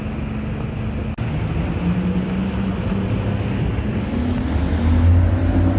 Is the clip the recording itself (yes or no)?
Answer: yes